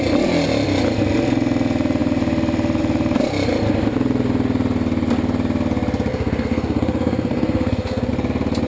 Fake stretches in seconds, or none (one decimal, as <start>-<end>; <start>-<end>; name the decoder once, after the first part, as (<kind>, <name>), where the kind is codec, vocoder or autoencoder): 6.1-8.1 (codec, SNAC)